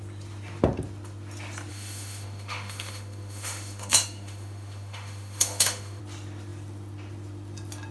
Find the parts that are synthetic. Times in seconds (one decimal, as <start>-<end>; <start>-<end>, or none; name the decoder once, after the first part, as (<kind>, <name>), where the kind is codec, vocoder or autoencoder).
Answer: 1.7-6.0 (autoencoder, DAC-VAE)